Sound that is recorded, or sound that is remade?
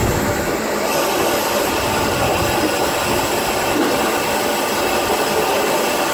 recorded